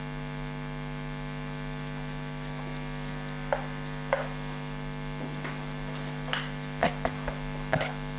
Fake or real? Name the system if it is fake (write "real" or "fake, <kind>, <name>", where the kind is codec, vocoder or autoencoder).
real